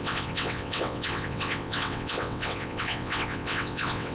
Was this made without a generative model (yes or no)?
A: no